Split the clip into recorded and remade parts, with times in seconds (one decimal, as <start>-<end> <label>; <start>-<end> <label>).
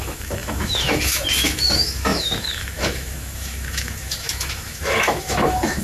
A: 0.0-5.8 remade